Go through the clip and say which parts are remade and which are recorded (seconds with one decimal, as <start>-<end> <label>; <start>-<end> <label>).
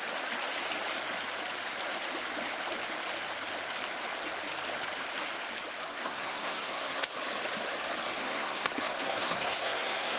0.0-5.9 recorded; 5.9-7.1 remade; 7.1-8.2 recorded; 8.2-10.2 remade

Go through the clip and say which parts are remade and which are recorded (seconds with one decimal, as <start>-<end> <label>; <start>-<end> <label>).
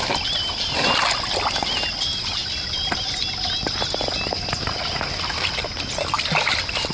0.0-6.9 recorded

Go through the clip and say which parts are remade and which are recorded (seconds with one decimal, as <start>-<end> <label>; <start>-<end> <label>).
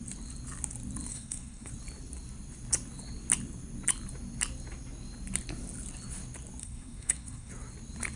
0.0-1.1 recorded; 1.1-1.7 remade; 1.7-6.6 recorded; 6.6-7.5 remade; 7.5-8.2 recorded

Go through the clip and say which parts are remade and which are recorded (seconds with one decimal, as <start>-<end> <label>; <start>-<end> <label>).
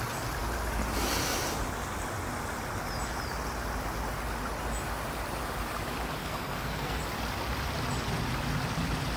0.0-6.2 recorded; 6.2-7.0 remade; 7.0-9.2 recorded